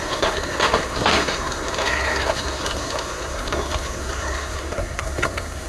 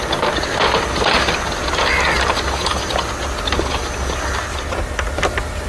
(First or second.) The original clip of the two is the second